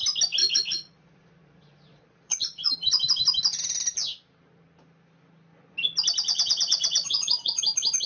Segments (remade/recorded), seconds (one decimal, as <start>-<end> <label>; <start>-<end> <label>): 0.0-0.4 recorded; 0.4-2.7 remade; 2.7-6.3 recorded; 6.3-7.6 remade; 7.6-8.1 recorded